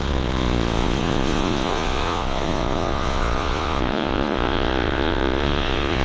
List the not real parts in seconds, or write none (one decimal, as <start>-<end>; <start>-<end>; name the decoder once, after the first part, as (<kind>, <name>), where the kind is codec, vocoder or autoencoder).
0.0-6.0 (vocoder, Vocos)